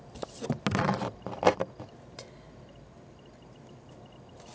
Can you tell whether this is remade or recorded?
recorded